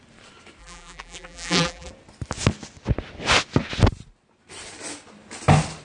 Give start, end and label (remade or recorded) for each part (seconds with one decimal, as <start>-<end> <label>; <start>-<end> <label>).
0.0-0.6 recorded; 0.6-1.9 remade; 1.9-5.8 recorded